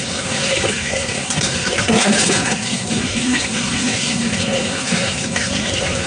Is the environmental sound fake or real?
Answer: fake